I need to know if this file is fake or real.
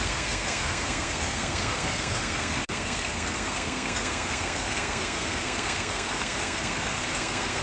fake